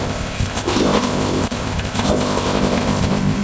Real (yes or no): no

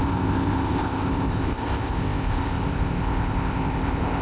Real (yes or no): no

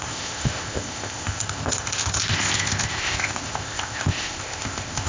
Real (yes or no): no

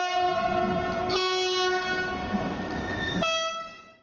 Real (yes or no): yes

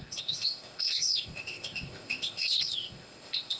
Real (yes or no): no